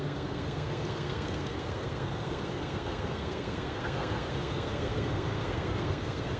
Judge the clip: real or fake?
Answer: fake